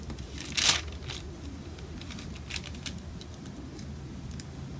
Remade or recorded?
recorded